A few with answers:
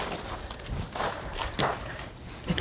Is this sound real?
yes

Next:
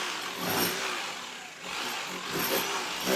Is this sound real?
yes